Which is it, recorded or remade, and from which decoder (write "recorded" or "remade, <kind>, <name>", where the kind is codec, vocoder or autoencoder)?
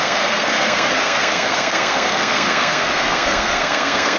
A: remade, codec, SNAC